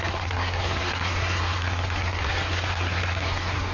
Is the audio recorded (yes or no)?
no